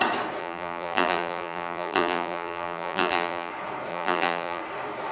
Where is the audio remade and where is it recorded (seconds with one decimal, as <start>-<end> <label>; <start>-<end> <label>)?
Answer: 0.0-0.4 recorded; 0.4-3.5 remade; 3.5-3.9 recorded; 3.9-4.6 remade; 4.6-5.1 recorded

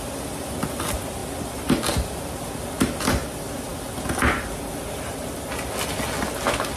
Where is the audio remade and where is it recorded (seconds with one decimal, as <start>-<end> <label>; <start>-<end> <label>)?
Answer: 0.0-1.2 recorded; 1.2-1.8 remade; 1.8-6.8 recorded